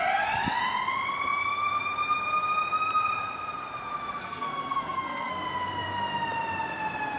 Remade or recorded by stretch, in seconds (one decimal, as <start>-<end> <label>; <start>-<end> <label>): 0.0-4.2 recorded; 4.2-5.3 remade; 5.3-7.2 recorded

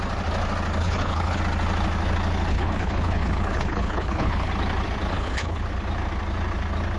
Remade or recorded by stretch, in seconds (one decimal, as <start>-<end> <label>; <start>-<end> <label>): 0.0-0.8 recorded; 0.8-1.4 remade; 1.4-2.5 recorded; 2.5-4.5 remade; 4.5-5.1 recorded; 5.1-5.6 remade; 5.6-7.0 recorded

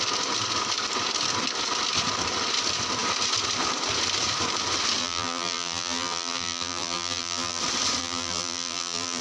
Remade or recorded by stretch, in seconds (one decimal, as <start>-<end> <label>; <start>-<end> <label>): 0.0-5.0 recorded; 5.0-7.6 remade; 7.6-8.0 recorded; 8.0-9.2 remade

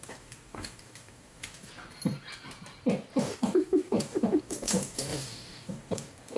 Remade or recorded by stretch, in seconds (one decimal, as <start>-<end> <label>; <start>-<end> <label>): 0.0-1.7 remade; 1.7-3.2 recorded; 3.2-6.4 remade